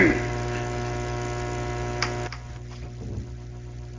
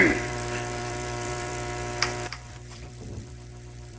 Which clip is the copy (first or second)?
second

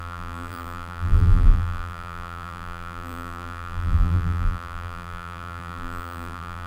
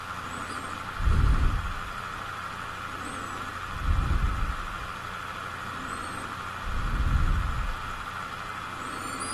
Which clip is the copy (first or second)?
first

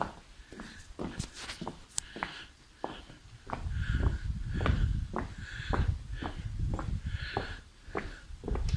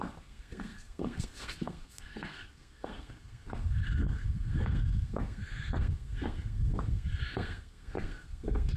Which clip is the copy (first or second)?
second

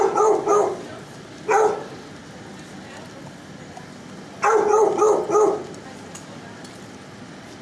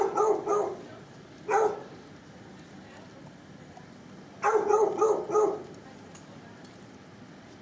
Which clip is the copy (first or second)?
second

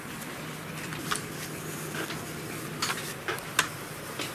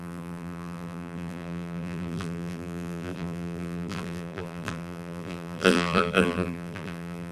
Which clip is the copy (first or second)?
second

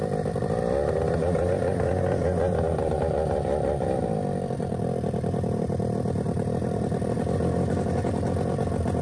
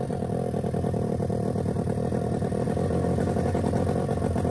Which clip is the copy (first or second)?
first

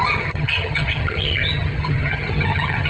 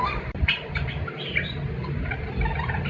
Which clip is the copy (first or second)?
first